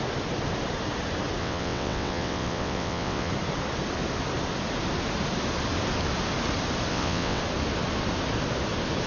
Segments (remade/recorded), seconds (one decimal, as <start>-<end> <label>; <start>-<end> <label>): 0.0-1.4 recorded; 1.4-3.3 remade; 3.3-6.9 recorded; 6.9-7.4 remade; 7.4-9.1 recorded